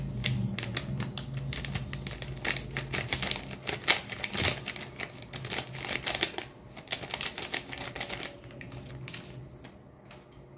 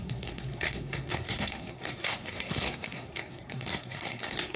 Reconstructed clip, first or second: second